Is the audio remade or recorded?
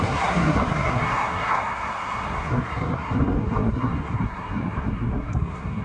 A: remade